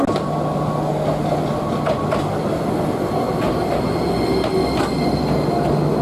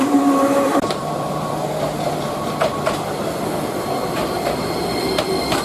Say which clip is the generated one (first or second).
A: second